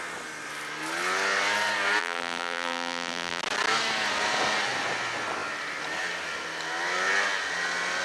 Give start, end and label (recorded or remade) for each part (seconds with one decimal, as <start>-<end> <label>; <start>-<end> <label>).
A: 0.0-2.0 recorded; 2.0-3.4 remade; 3.4-8.0 recorded